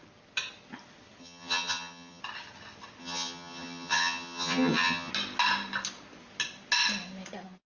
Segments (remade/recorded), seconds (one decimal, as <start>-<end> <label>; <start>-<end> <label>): 0.0-1.2 recorded; 1.2-2.2 remade; 2.2-3.0 recorded; 3.0-5.1 remade; 5.1-7.7 recorded